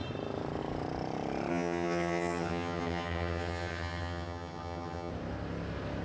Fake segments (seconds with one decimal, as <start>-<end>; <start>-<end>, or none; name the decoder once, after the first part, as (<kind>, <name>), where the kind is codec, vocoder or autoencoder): 1.5-5.1 (vocoder, HiFi-GAN)

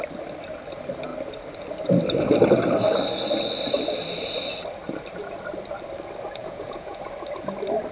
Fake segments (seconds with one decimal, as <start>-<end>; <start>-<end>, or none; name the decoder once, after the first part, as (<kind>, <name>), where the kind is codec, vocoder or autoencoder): 6.4-7.0 (vocoder, Vocos)